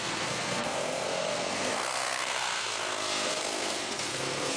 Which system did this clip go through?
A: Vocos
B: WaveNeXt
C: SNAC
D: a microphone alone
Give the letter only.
C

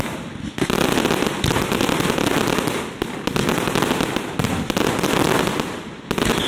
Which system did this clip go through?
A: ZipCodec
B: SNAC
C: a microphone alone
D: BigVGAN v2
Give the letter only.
C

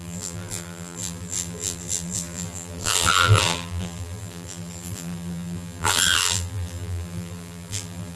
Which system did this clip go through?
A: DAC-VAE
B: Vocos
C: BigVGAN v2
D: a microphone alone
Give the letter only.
C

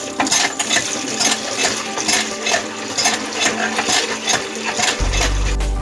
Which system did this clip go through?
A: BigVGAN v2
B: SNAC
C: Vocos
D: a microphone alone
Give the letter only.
D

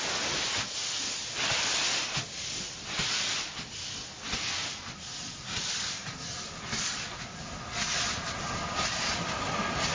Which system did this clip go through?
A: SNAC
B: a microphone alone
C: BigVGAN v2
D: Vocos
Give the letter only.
B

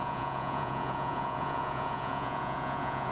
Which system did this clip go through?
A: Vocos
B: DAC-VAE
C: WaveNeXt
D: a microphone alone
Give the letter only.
A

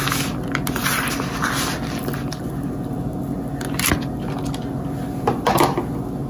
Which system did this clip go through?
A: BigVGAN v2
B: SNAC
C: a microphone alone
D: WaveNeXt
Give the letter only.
C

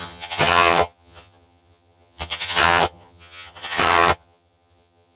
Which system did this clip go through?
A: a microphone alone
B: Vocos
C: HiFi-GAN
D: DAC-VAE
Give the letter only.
C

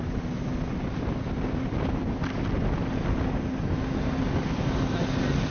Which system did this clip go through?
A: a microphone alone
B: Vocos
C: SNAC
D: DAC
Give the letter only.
A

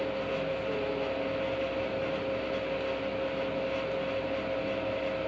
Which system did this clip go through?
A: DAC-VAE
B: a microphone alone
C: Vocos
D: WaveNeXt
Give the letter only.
B